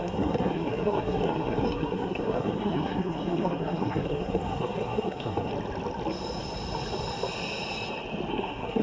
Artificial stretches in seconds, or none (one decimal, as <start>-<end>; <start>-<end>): 0.0-5.5; 8.3-8.8